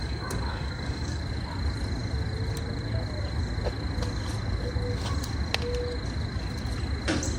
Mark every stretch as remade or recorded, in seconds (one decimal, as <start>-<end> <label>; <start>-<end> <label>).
0.0-1.2 remade; 1.2-7.4 recorded